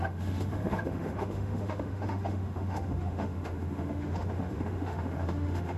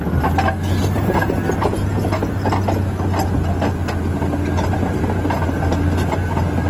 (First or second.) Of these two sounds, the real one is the second